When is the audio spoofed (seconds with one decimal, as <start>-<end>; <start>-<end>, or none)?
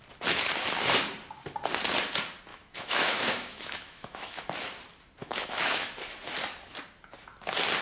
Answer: 2.5-4.4; 5.2-5.9